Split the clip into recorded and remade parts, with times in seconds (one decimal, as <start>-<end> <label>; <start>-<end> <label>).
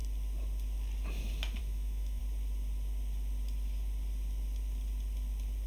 0.0-1.6 recorded; 1.6-2.2 remade; 2.2-5.7 recorded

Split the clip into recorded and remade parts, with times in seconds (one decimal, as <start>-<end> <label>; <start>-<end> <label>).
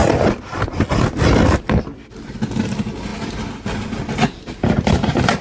0.0-5.4 recorded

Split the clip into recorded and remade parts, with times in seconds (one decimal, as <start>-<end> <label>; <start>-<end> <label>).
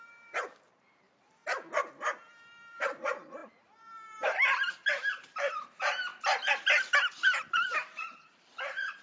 0.0-1.4 remade; 1.4-2.3 recorded; 2.3-6.1 remade; 6.1-7.5 recorded; 7.5-9.0 remade